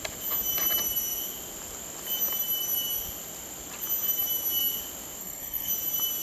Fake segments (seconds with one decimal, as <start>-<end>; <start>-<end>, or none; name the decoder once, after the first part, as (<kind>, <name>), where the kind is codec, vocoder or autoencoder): 5.2-5.7 (codec, SNAC)